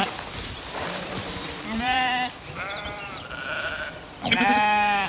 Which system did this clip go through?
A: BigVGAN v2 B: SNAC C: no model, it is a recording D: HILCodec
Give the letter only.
A